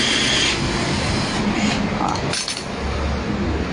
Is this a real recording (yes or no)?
yes